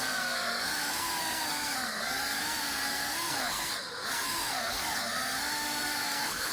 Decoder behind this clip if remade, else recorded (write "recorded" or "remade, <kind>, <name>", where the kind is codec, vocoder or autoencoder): remade, codec, SNAC